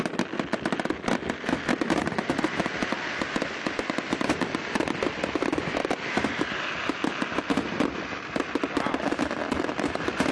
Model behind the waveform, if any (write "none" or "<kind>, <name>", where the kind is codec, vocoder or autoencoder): none